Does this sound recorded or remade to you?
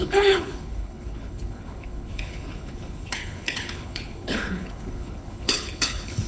remade